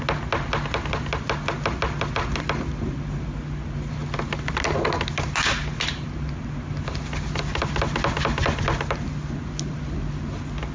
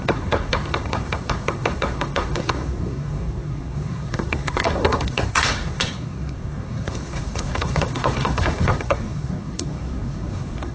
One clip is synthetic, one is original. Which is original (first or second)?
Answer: first